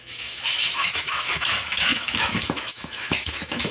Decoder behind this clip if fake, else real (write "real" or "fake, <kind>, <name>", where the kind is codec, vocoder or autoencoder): fake, autoencoder, DAC-VAE